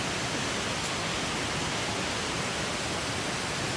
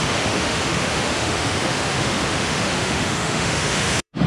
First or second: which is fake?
second